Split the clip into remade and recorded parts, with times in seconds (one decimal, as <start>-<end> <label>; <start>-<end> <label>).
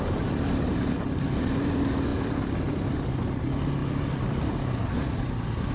0.0-5.7 recorded